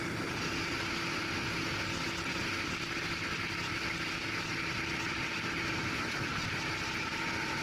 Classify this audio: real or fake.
real